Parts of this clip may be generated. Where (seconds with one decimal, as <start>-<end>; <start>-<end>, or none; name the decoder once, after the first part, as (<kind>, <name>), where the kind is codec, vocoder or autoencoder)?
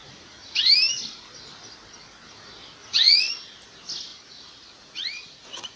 0.0-0.7 (vocoder, Vocos); 2.8-3.3; 4.1-5.8